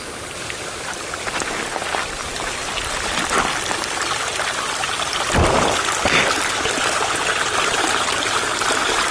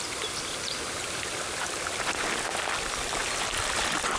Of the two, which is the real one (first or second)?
second